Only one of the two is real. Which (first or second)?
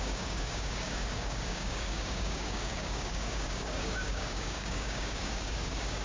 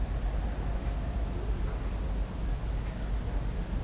second